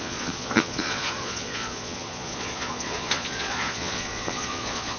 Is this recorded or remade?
remade